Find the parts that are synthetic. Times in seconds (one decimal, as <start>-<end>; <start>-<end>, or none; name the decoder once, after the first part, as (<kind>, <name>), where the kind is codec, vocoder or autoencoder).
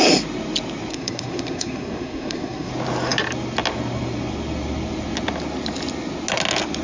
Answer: 0.9-2.7 (codec, SNAC)